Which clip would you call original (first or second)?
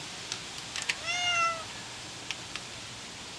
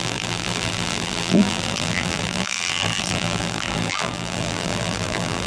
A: first